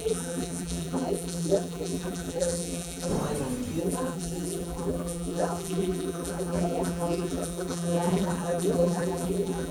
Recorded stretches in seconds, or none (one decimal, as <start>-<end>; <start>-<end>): 3.1-3.8